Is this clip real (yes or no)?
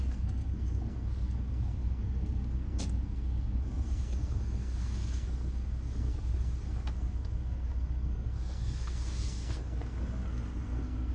no